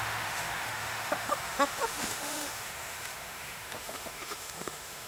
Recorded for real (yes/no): no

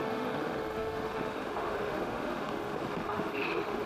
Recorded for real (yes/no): no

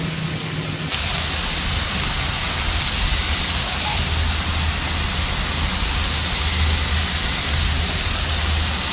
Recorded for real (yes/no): yes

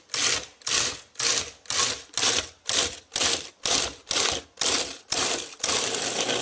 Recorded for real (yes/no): yes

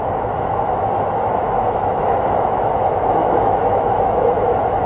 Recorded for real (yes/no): no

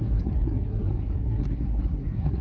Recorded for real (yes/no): no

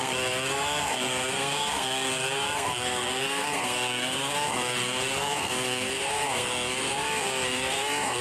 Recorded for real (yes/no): no